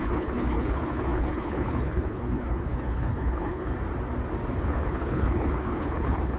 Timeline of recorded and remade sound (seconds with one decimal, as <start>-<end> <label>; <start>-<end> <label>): 0.0-3.7 remade; 3.7-4.6 recorded; 4.6-6.4 remade